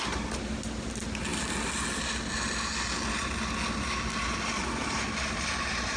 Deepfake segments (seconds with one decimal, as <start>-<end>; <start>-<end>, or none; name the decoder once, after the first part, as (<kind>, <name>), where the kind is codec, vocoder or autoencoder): 4.8-6.0 (vocoder, BigVGAN v2)